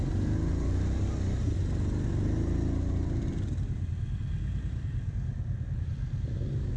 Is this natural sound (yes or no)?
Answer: yes